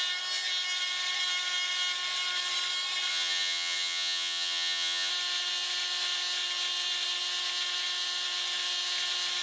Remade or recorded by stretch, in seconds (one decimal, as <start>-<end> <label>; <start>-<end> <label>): 0.0-3.1 recorded; 3.1-5.1 remade; 5.1-9.4 recorded